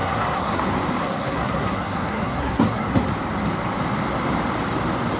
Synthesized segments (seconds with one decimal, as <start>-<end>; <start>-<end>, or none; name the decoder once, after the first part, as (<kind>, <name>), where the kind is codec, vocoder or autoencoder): 0.0-0.6 (codec, SNAC); 1.0-2.9